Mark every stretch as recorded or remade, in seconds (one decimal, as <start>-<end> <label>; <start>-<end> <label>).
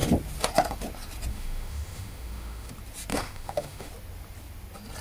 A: 0.0-1.3 recorded; 1.3-2.7 remade; 2.7-3.1 recorded; 3.1-3.9 remade; 3.9-5.0 recorded